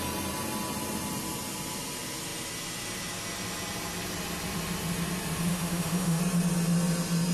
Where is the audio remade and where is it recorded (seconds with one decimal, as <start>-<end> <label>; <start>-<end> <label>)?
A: 0.0-5.5 recorded; 5.5-6.2 remade; 6.2-7.3 recorded